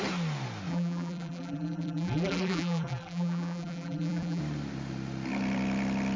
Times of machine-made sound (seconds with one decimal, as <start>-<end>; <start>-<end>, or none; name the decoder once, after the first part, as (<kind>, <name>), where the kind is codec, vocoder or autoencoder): 0.7-4.4 (vocoder, BigVGAN v2)